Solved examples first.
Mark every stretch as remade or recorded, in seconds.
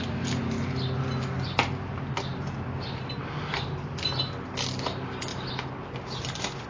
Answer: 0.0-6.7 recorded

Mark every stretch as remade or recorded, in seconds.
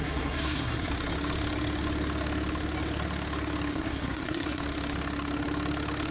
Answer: 0.0-0.9 remade; 0.9-3.7 recorded; 3.7-4.6 remade; 4.6-6.1 recorded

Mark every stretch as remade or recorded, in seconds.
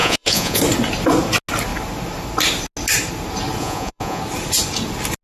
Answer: 0.0-0.6 remade; 0.6-3.6 recorded; 3.6-4.2 remade; 4.2-5.2 recorded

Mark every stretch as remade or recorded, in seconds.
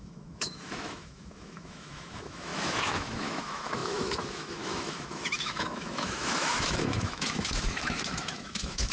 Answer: 0.0-8.9 remade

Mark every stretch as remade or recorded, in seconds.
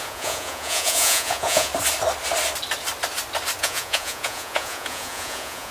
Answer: 0.0-1.7 remade; 1.7-3.6 recorded; 3.6-5.7 remade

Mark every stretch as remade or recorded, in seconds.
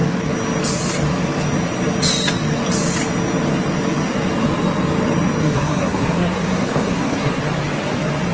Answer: 0.0-5.4 recorded; 5.4-7.4 remade; 7.4-8.3 recorded